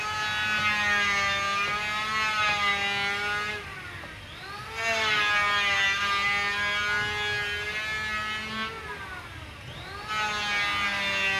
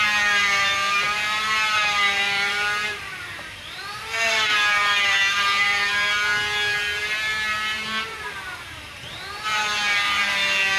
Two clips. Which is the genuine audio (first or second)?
first